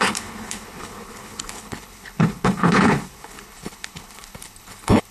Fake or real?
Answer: fake